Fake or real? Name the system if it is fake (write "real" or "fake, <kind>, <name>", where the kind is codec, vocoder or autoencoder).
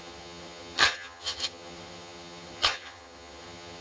fake, vocoder, HiFi-GAN